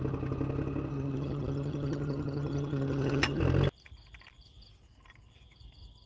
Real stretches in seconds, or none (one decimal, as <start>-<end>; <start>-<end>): 0.0-0.9; 3.4-6.1